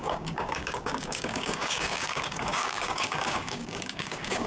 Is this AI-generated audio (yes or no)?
yes